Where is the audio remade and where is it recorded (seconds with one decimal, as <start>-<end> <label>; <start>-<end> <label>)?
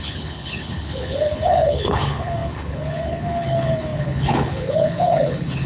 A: 0.0-5.7 remade